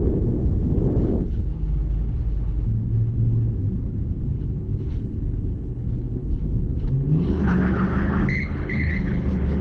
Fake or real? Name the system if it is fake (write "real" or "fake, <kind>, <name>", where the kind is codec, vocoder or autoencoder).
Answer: fake, codec, HILCodec